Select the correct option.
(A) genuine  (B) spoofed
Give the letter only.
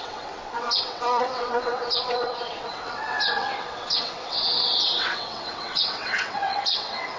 B